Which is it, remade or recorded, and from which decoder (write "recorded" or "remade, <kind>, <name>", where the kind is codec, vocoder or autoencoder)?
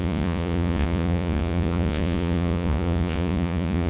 remade, vocoder, Vocos